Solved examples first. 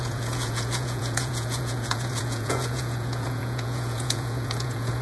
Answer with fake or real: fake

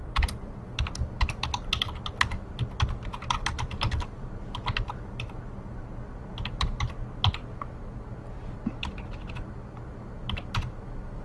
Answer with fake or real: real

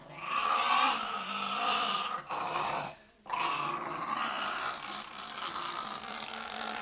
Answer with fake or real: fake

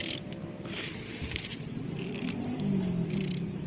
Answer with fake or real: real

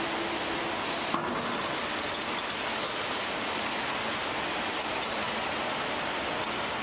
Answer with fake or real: real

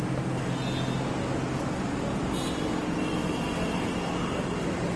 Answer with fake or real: real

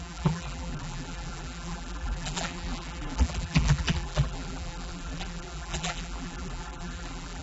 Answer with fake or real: fake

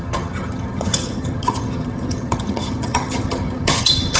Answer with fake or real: fake